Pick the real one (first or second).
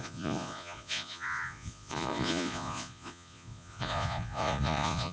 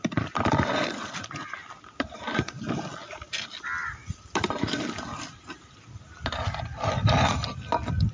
second